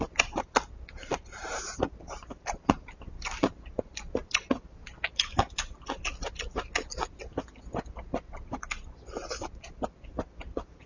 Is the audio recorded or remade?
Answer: recorded